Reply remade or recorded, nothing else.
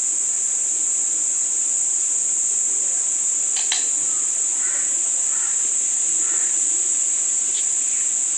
recorded